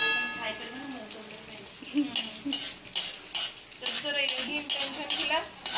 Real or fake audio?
real